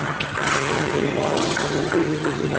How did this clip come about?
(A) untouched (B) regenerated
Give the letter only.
B